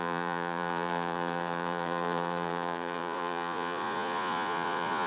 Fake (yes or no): yes